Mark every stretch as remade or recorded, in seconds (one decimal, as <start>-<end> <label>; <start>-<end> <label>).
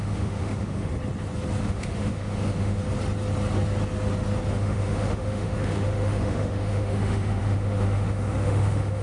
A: 0.0-0.9 remade; 0.9-1.6 recorded; 1.6-2.8 remade; 2.8-4.5 recorded; 4.5-9.0 remade